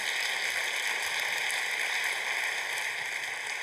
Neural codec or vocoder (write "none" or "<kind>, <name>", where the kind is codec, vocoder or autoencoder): none